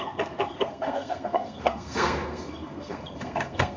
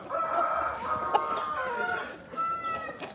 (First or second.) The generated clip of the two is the first